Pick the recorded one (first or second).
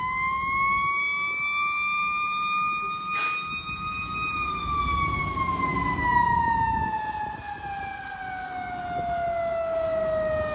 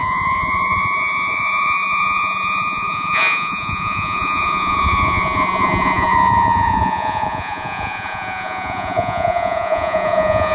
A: first